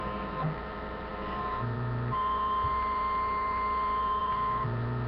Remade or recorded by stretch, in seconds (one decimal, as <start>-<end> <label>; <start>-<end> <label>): 0.0-5.1 remade